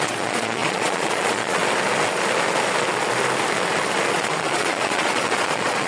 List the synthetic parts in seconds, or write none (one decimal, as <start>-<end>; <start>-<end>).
0.0-1.6; 4.1-5.9